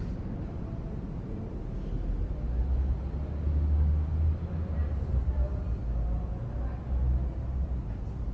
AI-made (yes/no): no